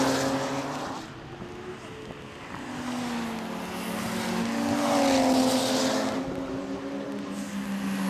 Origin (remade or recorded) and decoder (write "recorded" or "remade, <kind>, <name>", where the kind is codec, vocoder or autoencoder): recorded